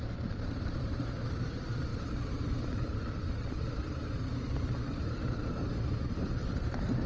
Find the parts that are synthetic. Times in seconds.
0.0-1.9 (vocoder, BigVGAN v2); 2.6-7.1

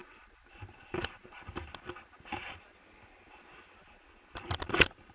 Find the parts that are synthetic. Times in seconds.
0.0-1.6 (vocoder, BigVGAN v2)

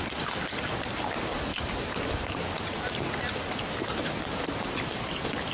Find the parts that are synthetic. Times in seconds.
1.5-4.8 (vocoder, BigVGAN v2)

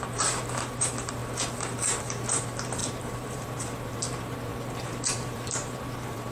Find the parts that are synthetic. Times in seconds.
0.0-1.2 (vocoder, BigVGAN v2); 2.0-4.5; 5.1-6.3

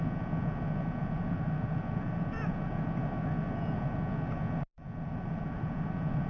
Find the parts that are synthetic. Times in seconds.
1.0-2.6 (vocoder, BigVGAN v2); 4.7-6.3

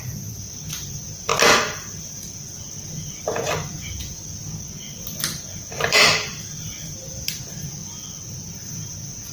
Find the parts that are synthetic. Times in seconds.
0.0-1.3 (vocoder, BigVGAN v2); 5.9-7.8; 8.5-9.3

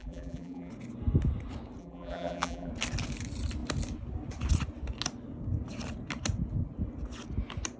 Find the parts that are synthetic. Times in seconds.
0.0-0.7 (vocoder, BigVGAN v2); 1.8-2.7

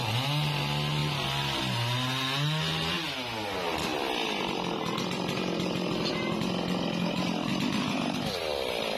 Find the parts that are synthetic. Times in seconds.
7.5-8.4 (vocoder, BigVGAN v2)